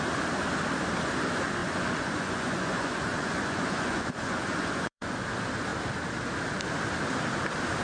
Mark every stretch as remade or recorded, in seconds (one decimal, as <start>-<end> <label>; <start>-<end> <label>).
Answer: 0.0-1.6 recorded; 1.6-5.2 remade; 5.2-7.8 recorded